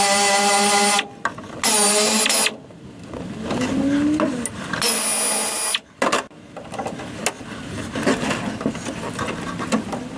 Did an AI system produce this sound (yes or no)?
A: no